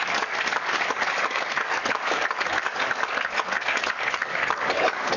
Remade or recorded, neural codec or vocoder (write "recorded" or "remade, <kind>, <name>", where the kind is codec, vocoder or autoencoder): remade, codec, DAC